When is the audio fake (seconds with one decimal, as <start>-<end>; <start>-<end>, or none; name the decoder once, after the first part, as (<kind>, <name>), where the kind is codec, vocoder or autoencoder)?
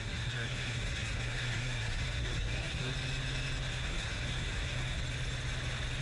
0.0-2.9 (codec, SNAC); 3.7-5.0